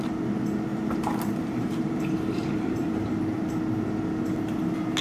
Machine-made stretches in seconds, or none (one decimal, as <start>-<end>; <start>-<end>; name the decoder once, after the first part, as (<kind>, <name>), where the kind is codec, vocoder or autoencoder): 0.7-3.1 (vocoder, BigVGAN v2)